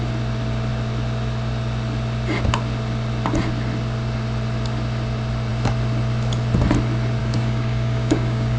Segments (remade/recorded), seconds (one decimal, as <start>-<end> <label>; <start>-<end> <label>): 0.0-7.2 recorded; 7.2-8.6 remade